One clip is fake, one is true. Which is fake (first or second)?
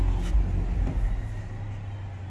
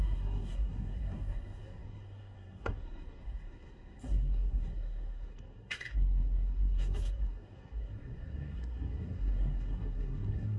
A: second